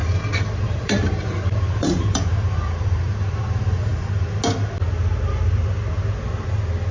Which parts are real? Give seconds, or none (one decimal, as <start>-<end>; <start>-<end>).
0.0-0.6; 3.9-6.9